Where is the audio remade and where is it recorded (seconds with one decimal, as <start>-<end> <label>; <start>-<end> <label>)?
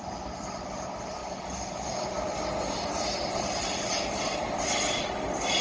0.0-5.6 recorded